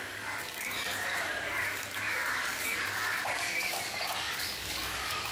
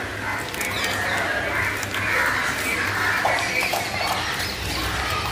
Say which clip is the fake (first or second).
first